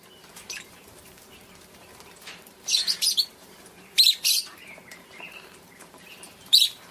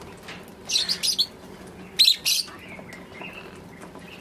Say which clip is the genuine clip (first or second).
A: second